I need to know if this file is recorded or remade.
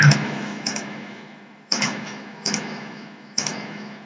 remade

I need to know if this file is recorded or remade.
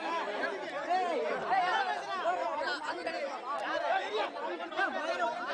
recorded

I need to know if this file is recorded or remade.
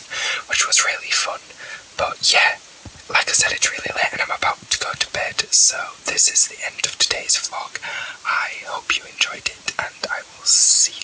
remade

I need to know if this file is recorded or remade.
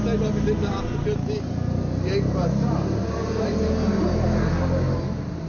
recorded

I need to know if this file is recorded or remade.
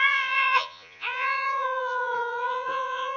remade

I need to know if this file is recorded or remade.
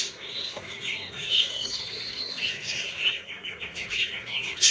remade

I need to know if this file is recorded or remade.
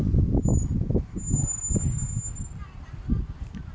recorded